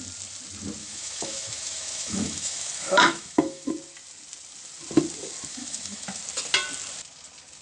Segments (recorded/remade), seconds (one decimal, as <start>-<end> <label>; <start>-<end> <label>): 0.0-0.8 recorded; 0.8-3.7 remade; 3.7-5.5 recorded; 5.5-6.2 remade; 6.2-7.6 recorded